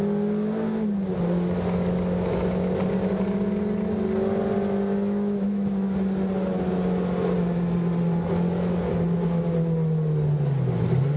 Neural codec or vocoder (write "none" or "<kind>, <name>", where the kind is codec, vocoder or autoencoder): none